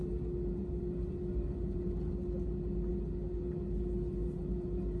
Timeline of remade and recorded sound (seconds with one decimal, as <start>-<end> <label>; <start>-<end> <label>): 0.0-5.0 recorded